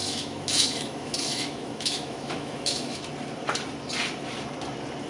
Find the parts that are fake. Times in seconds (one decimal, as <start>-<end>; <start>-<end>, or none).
0.0-3.0